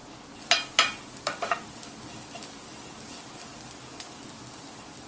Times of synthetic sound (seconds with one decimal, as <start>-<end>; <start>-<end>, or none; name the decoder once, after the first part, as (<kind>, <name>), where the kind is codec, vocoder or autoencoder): none